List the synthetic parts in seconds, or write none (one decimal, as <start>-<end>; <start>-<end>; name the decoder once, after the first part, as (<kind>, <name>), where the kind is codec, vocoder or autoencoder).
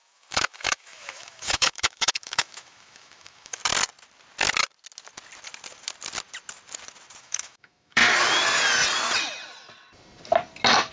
0.0-3.6 (autoencoder, DAC-VAE); 7.2-8.0